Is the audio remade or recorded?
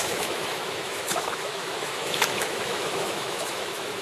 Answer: remade